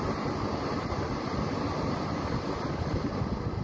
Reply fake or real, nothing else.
real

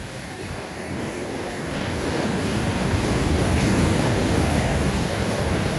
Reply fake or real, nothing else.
fake